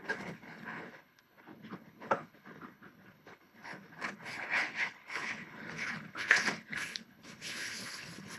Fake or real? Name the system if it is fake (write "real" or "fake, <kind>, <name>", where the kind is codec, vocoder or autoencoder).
fake, codec, HILCodec